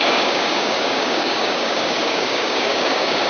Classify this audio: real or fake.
fake